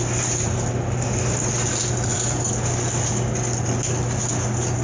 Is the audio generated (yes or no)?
no